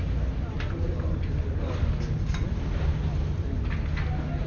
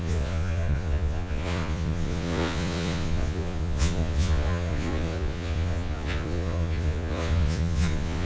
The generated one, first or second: second